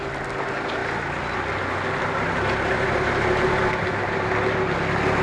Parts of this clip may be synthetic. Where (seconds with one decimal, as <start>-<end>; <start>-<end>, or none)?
none